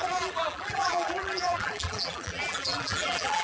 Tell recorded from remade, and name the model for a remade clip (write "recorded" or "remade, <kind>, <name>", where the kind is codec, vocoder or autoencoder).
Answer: remade, vocoder, BigVGAN v2